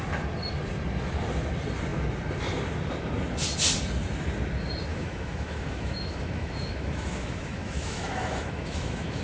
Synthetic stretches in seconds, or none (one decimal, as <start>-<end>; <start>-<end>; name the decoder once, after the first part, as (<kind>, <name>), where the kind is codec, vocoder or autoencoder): 4.9-9.2 (autoencoder, DAC-VAE)

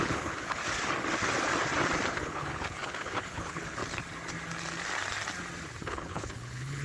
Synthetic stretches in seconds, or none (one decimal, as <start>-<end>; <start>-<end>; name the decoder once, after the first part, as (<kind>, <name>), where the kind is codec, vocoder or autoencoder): 0.0-0.6 (codec, HILCodec); 2.1-3.8; 5.8-6.8

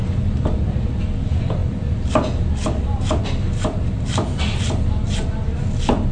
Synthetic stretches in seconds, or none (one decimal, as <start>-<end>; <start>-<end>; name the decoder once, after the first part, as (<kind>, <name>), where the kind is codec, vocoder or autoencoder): none

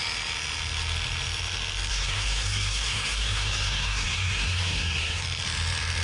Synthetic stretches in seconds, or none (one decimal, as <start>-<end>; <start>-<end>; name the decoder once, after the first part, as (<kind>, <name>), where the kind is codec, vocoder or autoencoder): 1.9-5.2 (codec, SNAC)

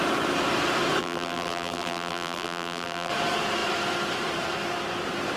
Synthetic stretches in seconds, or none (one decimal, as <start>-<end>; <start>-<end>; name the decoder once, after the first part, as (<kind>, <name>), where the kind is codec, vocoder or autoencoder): 1.0-3.1 (vocoder, BigVGAN v2)

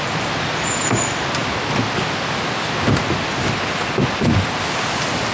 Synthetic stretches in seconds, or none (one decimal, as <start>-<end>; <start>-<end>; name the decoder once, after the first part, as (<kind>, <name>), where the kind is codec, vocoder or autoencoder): none

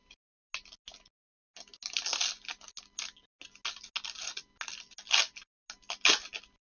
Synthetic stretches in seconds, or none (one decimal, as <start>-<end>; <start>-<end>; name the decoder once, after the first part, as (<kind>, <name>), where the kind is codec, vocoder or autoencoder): none

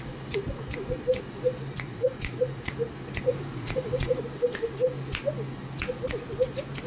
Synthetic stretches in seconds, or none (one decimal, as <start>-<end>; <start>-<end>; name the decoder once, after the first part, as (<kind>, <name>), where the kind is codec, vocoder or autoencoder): 1.7-2.7 (vocoder, Vocos); 3.3-4.2